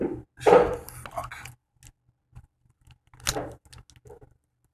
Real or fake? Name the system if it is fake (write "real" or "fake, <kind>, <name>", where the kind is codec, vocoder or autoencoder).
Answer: real